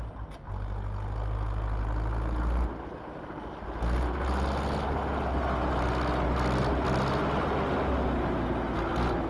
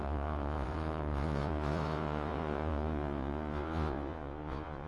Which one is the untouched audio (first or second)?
first